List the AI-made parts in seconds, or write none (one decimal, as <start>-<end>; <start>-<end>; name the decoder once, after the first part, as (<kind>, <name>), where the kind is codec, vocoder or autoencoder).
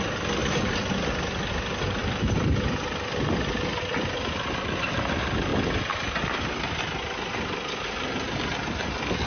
none